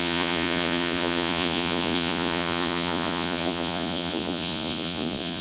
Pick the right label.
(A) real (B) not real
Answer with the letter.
B